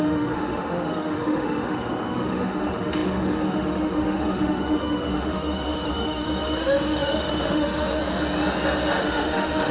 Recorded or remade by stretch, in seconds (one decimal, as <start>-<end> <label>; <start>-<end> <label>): 0.0-8.0 remade; 8.0-9.0 recorded; 9.0-9.7 remade